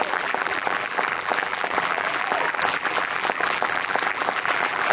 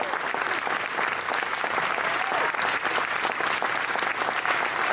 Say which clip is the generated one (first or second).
first